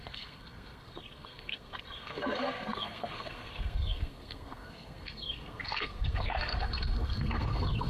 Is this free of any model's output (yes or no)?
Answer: no